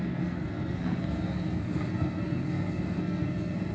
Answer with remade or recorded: remade